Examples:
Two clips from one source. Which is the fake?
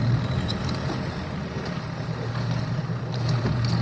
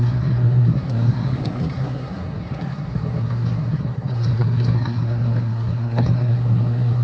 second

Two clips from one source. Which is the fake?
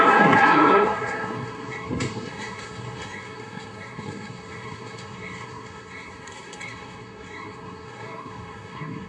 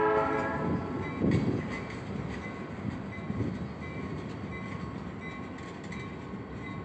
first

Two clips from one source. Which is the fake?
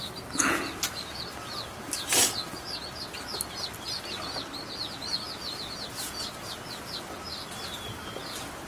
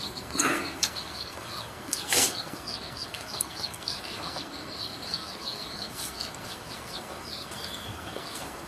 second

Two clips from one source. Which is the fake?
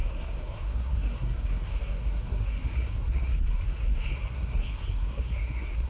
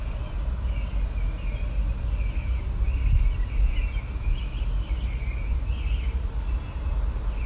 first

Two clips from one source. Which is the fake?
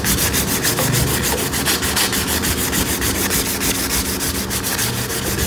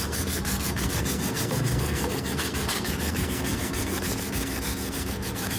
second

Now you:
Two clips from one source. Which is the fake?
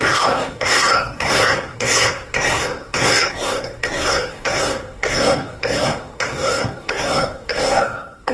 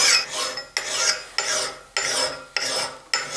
first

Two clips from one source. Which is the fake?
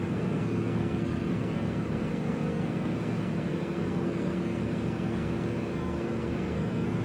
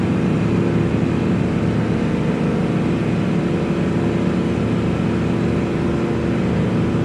first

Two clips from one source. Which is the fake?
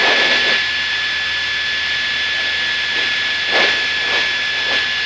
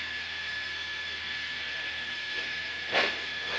second